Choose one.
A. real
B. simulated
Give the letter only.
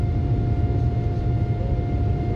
A